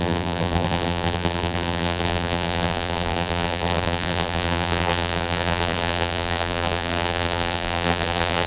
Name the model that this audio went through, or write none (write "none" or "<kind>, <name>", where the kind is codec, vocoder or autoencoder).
vocoder, BigVGAN v2